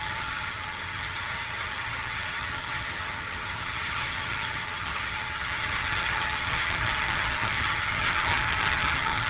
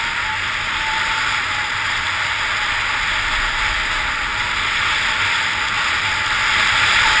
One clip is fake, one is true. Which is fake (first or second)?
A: first